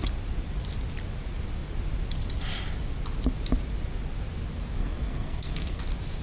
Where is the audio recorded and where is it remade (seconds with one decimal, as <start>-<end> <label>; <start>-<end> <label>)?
0.0-4.8 recorded; 4.8-5.8 remade; 5.8-6.2 recorded

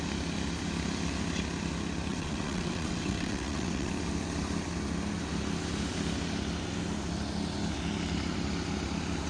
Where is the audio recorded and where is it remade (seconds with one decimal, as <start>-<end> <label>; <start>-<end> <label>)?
0.0-2.1 recorded; 2.1-3.9 remade; 3.9-9.3 recorded

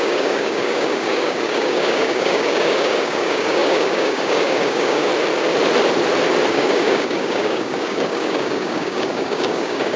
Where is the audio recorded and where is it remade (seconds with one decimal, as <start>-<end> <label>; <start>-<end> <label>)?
0.0-5.1 remade; 5.1-6.5 recorded; 6.5-10.0 remade

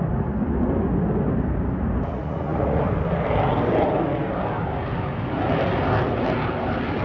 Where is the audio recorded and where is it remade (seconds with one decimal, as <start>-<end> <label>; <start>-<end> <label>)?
0.0-2.0 recorded; 2.0-2.8 remade; 2.8-7.0 recorded

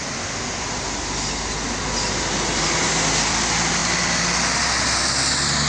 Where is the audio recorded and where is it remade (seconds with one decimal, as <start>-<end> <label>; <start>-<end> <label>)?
0.0-5.7 recorded

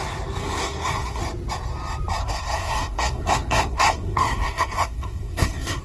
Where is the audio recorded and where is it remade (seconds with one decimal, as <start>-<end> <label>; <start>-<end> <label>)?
0.0-0.4 recorded; 0.4-1.2 remade; 1.2-2.2 recorded; 2.2-5.8 remade

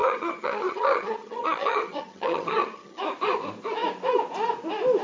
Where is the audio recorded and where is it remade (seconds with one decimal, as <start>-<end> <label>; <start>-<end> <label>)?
0.0-3.0 remade; 3.0-5.0 recorded